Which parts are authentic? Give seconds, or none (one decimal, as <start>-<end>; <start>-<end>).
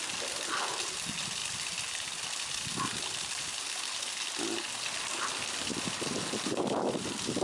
0.0-7.4